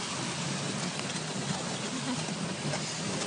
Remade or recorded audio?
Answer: recorded